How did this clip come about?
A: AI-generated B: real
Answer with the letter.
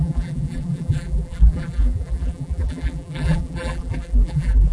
A